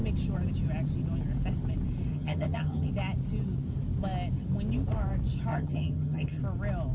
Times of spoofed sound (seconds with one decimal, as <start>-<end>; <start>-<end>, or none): 2.1-2.9; 5.5-6.4